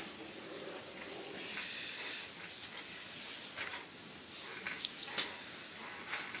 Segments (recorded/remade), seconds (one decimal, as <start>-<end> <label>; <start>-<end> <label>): 0.0-6.4 recorded